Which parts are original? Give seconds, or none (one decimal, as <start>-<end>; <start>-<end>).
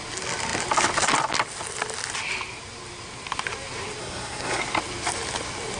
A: 0.0-4.0; 4.6-5.8